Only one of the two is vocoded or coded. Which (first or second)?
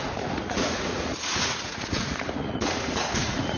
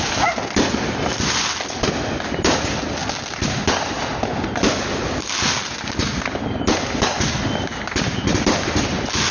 first